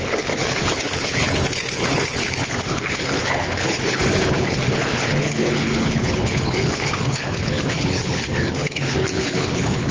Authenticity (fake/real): fake